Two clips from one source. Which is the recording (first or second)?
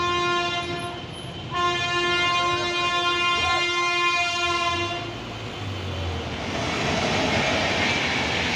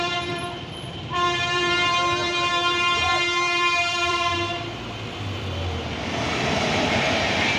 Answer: first